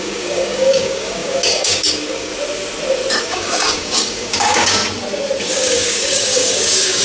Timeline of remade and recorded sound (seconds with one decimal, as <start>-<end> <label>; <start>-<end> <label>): 0.0-2.3 remade; 2.3-3.2 recorded; 3.2-4.8 remade; 4.8-5.4 recorded; 5.4-7.0 remade